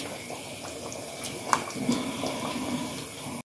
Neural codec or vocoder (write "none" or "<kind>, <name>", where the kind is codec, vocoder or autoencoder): none